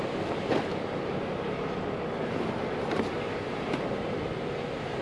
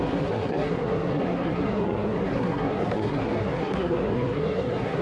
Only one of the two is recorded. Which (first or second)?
first